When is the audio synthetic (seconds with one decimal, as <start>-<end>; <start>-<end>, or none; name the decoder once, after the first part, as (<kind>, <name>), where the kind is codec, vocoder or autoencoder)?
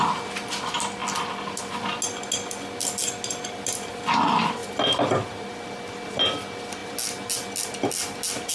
none